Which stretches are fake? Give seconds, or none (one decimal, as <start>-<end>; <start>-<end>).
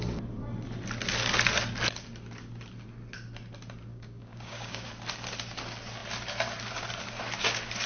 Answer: 3.9-4.9